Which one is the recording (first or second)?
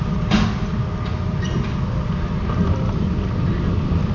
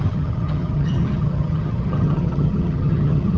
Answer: first